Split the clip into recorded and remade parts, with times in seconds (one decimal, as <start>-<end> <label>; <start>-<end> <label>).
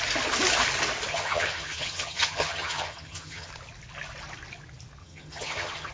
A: 0.0-1.1 recorded; 1.1-3.5 remade; 3.5-5.0 recorded; 5.0-5.9 remade